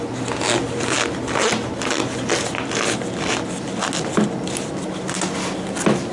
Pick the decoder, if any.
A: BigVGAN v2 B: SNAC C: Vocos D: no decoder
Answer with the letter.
D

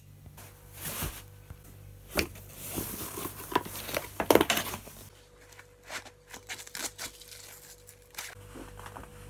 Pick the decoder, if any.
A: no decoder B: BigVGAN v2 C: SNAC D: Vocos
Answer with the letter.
A